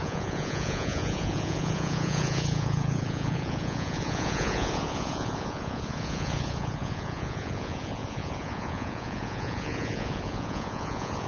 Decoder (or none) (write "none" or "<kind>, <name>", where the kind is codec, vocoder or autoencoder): vocoder, Vocos